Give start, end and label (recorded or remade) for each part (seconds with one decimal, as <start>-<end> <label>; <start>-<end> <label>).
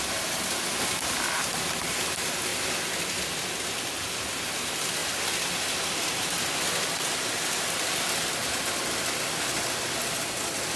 0.0-10.8 recorded